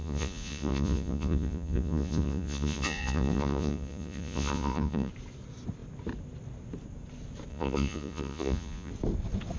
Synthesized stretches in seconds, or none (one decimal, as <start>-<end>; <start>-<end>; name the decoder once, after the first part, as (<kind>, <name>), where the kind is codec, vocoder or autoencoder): 0.0-5.1 (vocoder, Vocos); 7.5-8.9